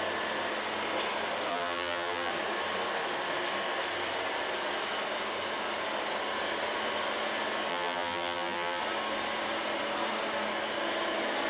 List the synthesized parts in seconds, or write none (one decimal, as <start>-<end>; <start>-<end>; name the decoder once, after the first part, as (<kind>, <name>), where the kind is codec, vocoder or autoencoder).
1.5-2.3 (vocoder, BigVGAN v2); 7.7-8.8